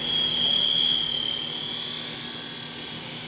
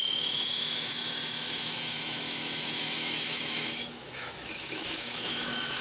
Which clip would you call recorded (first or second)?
first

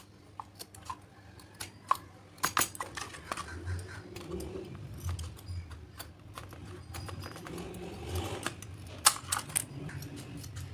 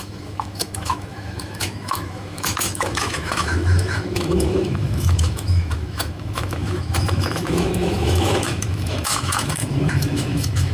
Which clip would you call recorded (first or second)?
first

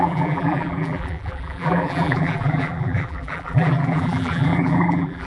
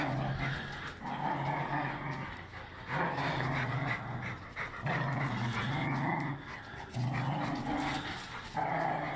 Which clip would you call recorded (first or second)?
second